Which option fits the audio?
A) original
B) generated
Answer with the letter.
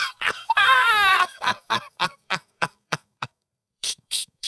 B